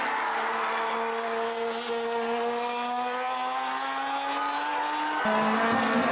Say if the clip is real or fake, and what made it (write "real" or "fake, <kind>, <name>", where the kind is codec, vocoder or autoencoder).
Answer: real